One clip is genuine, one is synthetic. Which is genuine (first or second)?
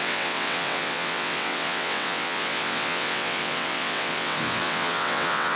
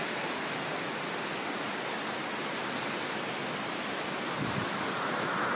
second